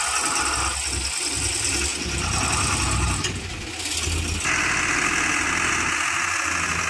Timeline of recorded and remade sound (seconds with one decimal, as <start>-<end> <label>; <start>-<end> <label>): 0.0-1.9 recorded; 1.9-2.8 remade; 2.8-6.9 recorded